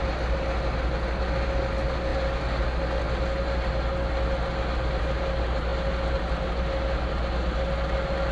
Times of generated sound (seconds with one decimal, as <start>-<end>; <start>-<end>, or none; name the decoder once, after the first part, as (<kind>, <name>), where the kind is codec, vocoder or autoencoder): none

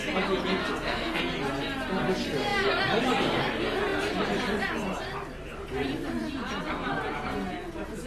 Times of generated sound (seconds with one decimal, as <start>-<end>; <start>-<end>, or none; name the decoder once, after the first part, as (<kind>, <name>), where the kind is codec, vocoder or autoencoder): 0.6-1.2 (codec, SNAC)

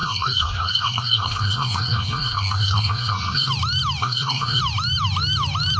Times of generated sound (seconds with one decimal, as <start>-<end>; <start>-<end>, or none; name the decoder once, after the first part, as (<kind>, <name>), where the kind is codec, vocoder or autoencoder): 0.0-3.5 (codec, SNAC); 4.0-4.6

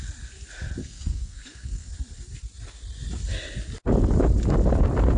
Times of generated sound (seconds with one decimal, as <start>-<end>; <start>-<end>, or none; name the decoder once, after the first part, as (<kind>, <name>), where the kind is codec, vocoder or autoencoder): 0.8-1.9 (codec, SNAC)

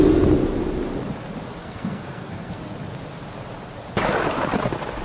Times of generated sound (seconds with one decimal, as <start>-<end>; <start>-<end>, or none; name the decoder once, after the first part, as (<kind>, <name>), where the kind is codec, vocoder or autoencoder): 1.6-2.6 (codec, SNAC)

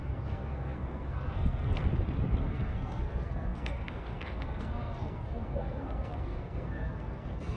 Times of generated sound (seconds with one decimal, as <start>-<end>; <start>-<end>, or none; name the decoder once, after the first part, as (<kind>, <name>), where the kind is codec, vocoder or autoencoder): 0.0-1.9 (codec, SNAC); 2.4-7.6

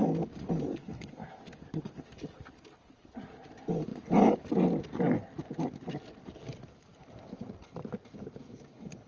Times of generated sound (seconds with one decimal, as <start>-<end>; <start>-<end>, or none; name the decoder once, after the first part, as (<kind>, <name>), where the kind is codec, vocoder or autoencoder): 0.8-1.4 (codec, SNAC)